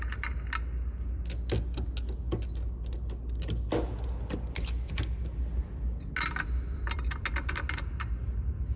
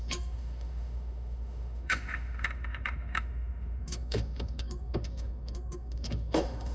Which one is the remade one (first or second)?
second